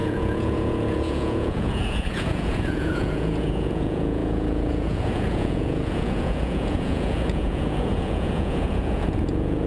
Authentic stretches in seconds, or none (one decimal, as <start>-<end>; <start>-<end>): none

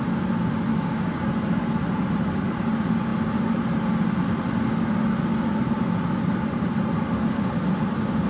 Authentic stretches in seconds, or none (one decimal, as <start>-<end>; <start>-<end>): 0.0-0.7; 1.3-8.3

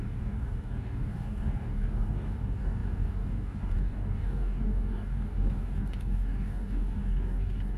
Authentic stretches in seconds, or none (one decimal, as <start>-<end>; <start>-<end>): none

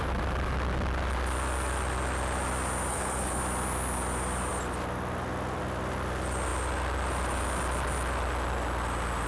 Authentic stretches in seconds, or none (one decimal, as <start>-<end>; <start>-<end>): 0.0-2.9; 3.4-9.3

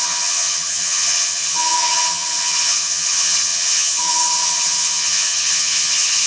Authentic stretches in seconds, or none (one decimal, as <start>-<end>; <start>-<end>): none

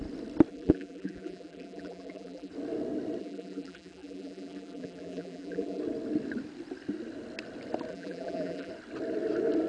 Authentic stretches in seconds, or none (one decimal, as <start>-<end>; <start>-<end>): 0.0-0.5; 2.5-3.2; 5.8-7.9; 8.7-9.7